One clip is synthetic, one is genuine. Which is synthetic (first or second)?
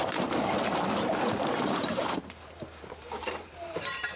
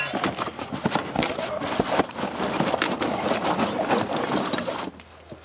first